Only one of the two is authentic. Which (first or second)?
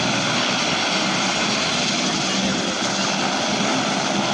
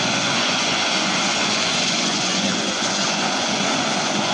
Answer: first